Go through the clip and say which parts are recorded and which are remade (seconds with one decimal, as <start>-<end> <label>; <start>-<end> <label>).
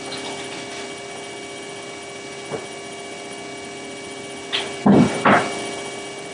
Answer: 0.0-4.8 recorded; 4.8-5.3 remade; 5.3-6.3 recorded